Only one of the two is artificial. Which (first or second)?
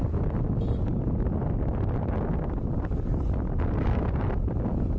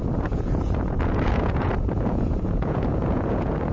second